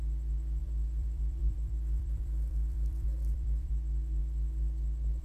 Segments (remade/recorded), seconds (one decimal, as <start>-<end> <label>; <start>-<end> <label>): 0.0-0.6 recorded; 0.6-3.7 remade; 3.7-5.2 recorded